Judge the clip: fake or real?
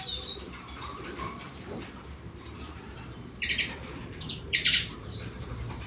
fake